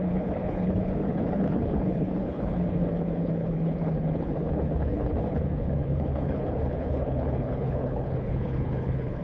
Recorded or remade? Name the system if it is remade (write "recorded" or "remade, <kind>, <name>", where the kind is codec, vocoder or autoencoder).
remade, codec, HILCodec